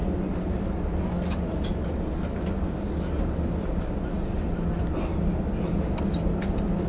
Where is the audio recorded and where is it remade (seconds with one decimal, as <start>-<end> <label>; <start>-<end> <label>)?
0.0-6.9 recorded